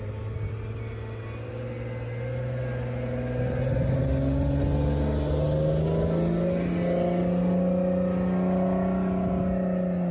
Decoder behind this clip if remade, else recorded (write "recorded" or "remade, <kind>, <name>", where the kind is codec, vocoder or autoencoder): recorded